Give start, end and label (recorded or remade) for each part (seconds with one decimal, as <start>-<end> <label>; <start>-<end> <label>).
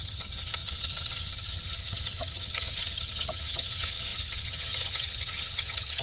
0.0-6.0 remade